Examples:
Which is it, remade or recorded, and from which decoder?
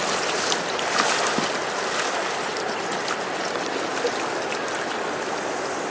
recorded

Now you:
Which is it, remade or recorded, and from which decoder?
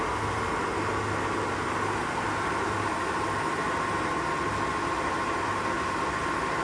recorded